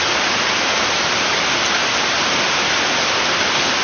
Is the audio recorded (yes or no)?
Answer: yes